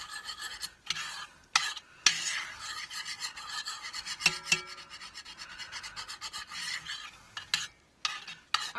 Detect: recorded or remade recorded